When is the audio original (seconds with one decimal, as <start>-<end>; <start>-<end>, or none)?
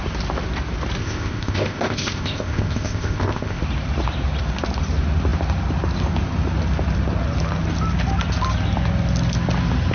0.0-1.0; 3.6-9.9